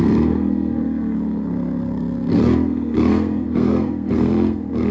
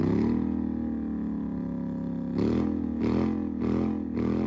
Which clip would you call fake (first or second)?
first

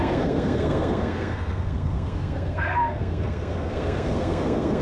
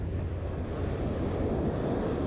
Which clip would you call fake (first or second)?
first